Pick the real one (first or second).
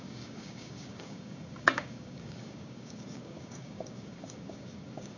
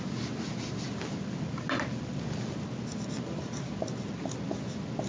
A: second